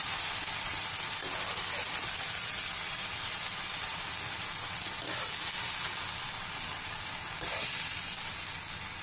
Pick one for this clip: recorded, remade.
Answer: recorded